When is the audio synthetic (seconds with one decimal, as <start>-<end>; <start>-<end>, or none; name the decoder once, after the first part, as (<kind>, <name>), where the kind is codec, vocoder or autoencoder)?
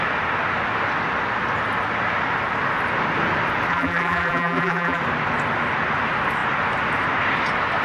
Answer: 3.7-5.0 (vocoder, BigVGAN v2)